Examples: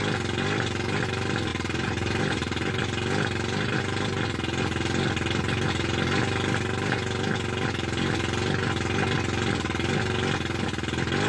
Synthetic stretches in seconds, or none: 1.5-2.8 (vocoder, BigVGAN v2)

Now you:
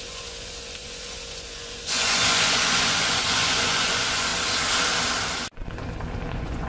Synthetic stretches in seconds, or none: 0.0-4.3 (vocoder, Vocos); 6.3-6.7

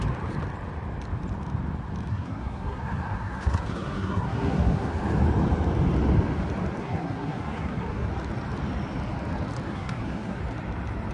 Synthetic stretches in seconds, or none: 2.1-4.9 (codec, SNAC); 6.8-8.1; 9.7-10.4

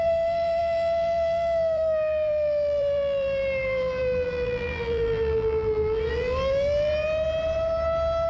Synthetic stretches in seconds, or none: 0.0-6.9 (vocoder, BigVGAN v2)

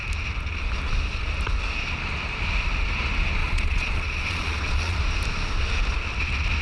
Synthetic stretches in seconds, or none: 3.4-5.0 (vocoder, Vocos)

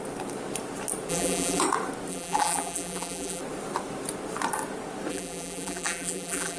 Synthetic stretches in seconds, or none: 1.1-1.6 (vocoder, BigVGAN v2); 2.1-3.4; 5.1-6.6

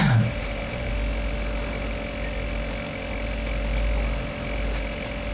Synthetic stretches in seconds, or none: 0.0-0.9 (vocoder, BigVGAN v2)

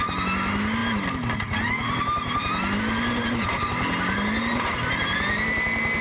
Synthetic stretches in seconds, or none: none